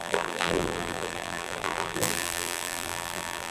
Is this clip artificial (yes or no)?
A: yes